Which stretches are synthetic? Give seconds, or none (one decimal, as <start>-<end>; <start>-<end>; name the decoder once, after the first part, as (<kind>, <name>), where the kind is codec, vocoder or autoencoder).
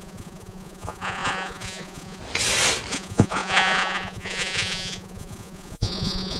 0.0-2.2 (vocoder, Vocos); 2.9-6.4